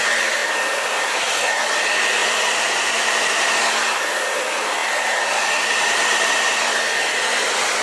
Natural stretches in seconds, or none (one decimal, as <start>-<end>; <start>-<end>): 0.0-7.8

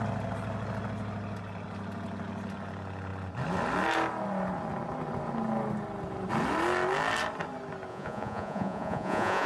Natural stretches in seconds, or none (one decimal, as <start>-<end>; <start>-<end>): 0.0-7.9

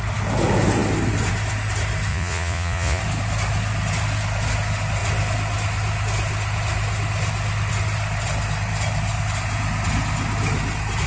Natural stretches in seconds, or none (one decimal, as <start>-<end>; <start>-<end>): 0.0-2.1; 3.0-11.1

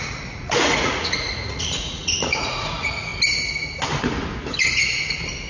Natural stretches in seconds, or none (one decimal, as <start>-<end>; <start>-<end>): 3.1-5.5

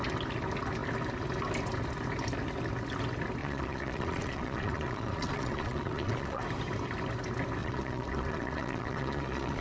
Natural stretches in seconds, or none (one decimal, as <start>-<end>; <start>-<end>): 0.0-3.4; 6.4-7.6